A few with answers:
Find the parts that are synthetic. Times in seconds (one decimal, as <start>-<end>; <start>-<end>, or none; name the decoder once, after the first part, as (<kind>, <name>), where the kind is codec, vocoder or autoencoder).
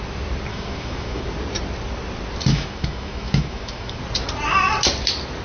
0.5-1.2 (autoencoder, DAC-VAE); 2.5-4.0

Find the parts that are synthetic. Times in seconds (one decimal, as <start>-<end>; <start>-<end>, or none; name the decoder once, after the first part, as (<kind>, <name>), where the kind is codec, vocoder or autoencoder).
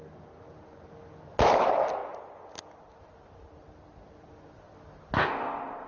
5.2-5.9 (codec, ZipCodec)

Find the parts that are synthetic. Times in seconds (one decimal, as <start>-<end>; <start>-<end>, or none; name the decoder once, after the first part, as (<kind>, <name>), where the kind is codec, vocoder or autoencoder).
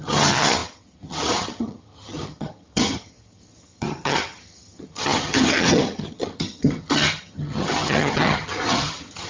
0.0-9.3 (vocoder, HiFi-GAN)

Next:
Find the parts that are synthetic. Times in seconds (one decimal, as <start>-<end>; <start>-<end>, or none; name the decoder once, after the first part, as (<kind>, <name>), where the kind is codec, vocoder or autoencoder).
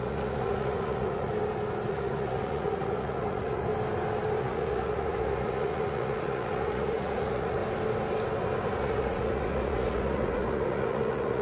0.0-1.3 (vocoder, Vocos); 1.9-3.7; 4.4-7.6; 8.7-11.4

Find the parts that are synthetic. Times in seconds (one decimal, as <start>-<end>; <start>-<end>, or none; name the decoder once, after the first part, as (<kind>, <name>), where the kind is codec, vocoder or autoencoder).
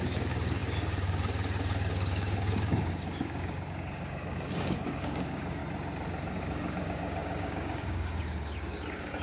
0.0-5.6 (codec, DAC); 6.4-9.2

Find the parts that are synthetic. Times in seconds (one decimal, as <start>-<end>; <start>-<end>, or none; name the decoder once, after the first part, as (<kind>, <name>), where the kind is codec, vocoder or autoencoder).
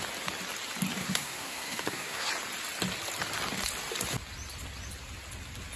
1.0-2.3 (codec, SNAC)